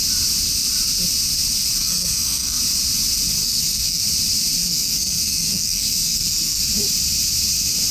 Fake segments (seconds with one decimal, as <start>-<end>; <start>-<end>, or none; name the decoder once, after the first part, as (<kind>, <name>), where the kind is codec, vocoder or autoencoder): 1.8-2.6 (codec, SNAC); 3.4-4.0; 4.6-6.6